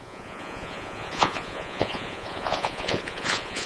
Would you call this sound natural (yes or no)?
no